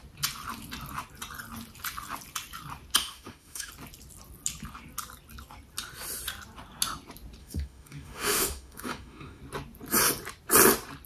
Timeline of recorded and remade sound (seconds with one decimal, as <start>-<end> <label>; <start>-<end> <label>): 0.0-3.0 recorded; 3.0-3.7 remade; 3.7-7.4 recorded; 7.4-9.4 remade; 9.4-11.1 recorded